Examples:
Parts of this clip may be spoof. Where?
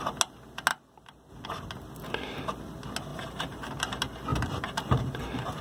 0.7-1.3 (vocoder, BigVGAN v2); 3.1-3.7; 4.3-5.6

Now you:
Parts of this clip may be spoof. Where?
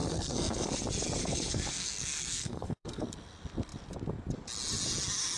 0.0-0.7 (codec, SNAC); 1.2-3.0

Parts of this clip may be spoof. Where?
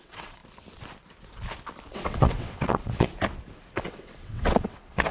0.0-0.4 (vocoder, WaveNeXt); 1.9-3.1; 3.7-5.1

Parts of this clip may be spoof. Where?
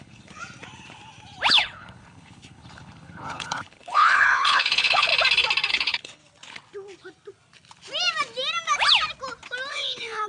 0.0-0.4 (codec, HILCodec); 1.5-5.1; 5.7-6.2; 9.7-10.3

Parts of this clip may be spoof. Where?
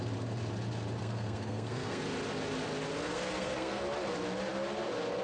1.0-2.0 (codec, SNAC); 3.1-3.8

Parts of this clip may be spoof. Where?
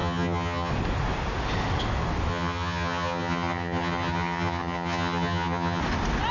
0.0-0.7 (vocoder, HiFi-GAN); 2.3-5.8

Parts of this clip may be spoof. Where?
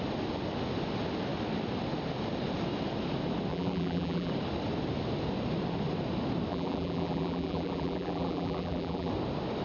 3.5-4.3 (vocoder, BigVGAN v2); 6.5-9.1